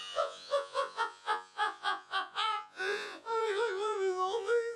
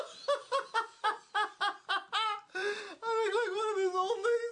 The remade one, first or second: first